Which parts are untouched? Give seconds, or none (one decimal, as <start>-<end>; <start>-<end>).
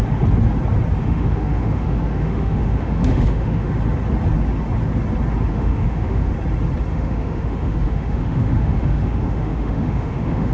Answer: 0.0-1.0; 3.7-5.5; 6.3-6.9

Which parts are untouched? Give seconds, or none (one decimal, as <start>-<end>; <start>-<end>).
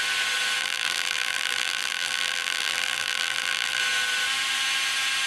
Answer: 0.0-0.6; 3.8-5.3